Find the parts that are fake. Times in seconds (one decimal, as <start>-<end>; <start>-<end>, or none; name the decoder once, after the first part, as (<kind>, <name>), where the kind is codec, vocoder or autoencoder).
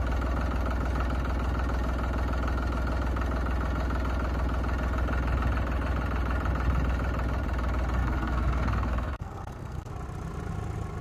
8.0-9.9 (codec, SNAC)